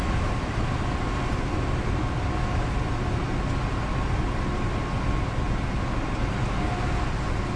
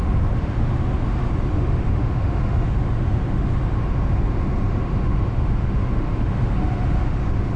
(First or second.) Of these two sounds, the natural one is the first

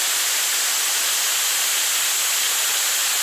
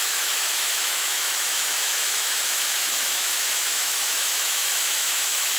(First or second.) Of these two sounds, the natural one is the first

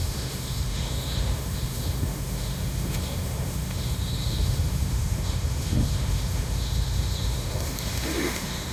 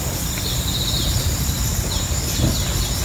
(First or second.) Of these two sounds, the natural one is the second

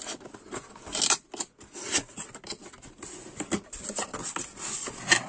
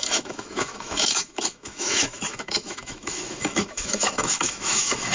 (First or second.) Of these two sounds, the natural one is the first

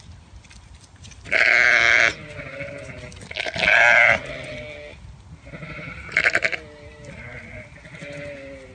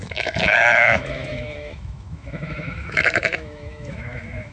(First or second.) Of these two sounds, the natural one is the first